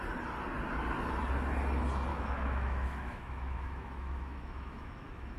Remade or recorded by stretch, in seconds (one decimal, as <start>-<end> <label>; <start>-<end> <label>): 0.0-2.1 recorded; 2.1-5.4 remade